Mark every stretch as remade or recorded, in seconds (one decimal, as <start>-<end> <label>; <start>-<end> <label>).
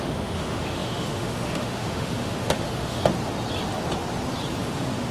0.0-3.0 remade; 3.0-4.6 recorded; 4.6-5.1 remade